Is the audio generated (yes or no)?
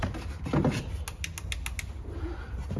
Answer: no